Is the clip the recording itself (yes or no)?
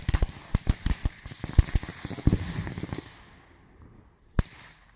yes